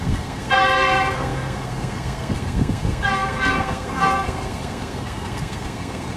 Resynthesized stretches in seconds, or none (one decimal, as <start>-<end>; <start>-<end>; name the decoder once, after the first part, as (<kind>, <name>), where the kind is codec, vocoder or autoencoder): 0.0-6.2 (codec, SNAC)